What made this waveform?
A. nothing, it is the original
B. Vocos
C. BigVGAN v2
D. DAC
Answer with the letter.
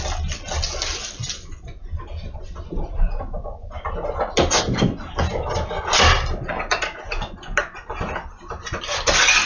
A